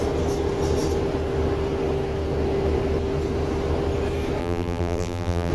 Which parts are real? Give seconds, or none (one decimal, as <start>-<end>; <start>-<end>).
0.0-4.4

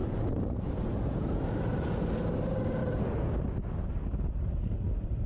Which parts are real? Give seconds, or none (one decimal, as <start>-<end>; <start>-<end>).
1.9-5.3

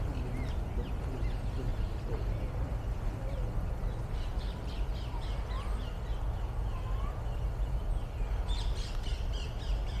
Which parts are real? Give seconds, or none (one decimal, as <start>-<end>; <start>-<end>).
0.0-1.7; 3.0-9.1

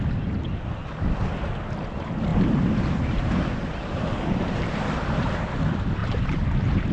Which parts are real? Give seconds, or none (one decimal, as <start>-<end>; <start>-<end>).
0.0-2.3; 5.5-6.0

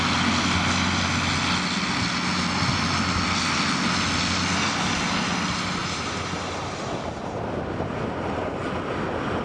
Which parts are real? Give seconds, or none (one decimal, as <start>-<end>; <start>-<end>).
0.0-5.8; 8.6-9.4

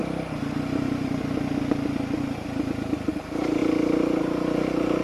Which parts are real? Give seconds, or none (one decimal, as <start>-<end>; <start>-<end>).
0.0-5.0

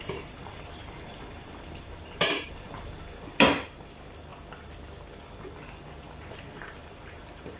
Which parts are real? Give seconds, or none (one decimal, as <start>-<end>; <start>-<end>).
4.3-5.9